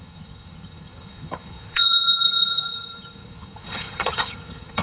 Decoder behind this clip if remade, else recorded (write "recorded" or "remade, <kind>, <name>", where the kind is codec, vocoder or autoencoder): remade, vocoder, HiFi-GAN